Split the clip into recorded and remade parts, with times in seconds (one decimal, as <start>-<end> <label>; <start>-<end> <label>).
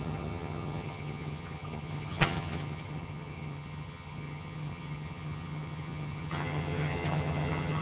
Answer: 0.0-7.8 remade